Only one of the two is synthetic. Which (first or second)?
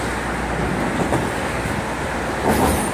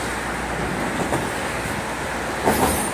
first